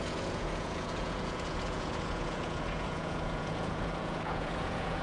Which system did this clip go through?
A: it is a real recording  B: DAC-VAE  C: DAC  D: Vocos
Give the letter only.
D